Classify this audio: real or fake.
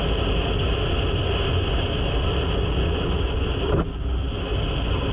real